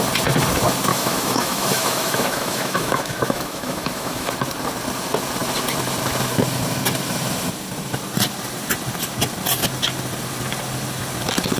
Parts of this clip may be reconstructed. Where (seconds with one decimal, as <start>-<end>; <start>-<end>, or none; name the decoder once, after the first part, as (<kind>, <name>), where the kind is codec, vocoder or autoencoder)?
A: 0.9-4.3 (autoencoder, DAC-VAE)